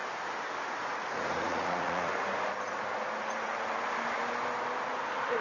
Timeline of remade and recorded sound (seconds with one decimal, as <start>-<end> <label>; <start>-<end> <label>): 0.0-0.8 recorded; 0.8-2.1 remade; 2.1-5.4 recorded

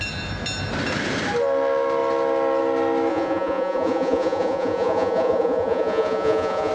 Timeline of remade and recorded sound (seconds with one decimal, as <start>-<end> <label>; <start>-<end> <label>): 0.0-3.1 recorded; 3.1-6.7 remade

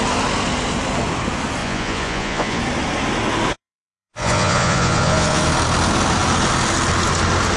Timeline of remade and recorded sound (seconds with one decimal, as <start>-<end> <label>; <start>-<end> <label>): 0.0-1.6 recorded; 1.6-2.6 remade; 2.6-3.6 recorded; 3.6-5.4 remade; 5.4-7.6 recorded

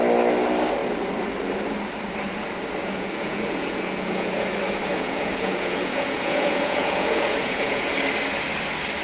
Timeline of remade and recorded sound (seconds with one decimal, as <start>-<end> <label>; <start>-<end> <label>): 0.0-2.8 recorded; 2.8-4.5 remade; 4.5-4.9 recorded; 4.9-7.9 remade; 7.9-9.0 recorded

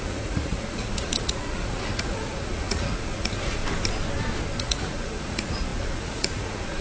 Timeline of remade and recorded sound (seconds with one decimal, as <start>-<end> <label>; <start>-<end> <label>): 0.0-3.6 remade; 3.6-4.6 recorded; 4.6-6.8 remade

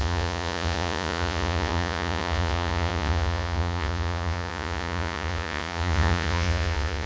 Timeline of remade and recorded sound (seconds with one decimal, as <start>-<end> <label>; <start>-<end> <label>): 0.0-7.1 remade

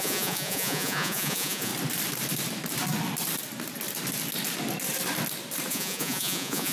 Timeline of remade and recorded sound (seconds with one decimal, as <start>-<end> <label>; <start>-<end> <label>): 0.0-1.7 remade; 1.7-5.7 recorded; 5.7-6.7 remade

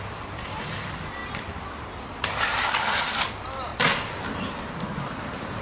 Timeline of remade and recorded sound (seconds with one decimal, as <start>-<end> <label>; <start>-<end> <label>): 0.0-5.6 recorded